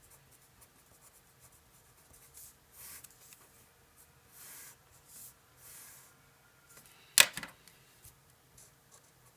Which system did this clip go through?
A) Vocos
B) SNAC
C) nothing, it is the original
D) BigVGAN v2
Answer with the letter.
C